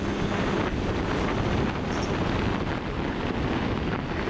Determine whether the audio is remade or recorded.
recorded